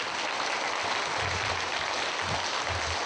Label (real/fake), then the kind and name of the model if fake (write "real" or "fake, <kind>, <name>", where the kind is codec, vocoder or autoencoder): real